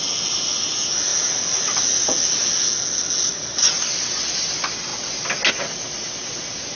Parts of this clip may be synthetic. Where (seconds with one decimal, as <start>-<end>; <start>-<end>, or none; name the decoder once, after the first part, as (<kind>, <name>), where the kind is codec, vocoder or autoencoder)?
none